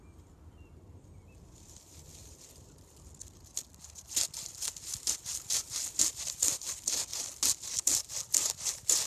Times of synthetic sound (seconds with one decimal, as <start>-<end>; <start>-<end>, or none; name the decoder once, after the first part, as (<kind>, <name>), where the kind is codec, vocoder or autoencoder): none